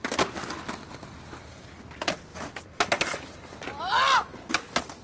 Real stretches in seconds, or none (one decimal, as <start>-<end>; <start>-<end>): 0.0-5.0